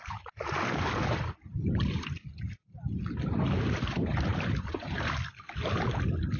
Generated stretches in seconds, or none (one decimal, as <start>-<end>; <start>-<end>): 4.3-5.0